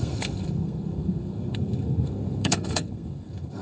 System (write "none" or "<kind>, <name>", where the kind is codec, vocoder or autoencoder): codec, SNAC